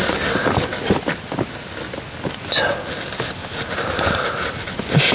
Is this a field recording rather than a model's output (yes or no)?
yes